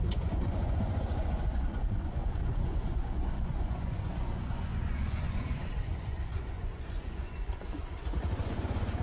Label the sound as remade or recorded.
remade